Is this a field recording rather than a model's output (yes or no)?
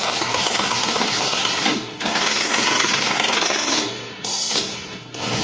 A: no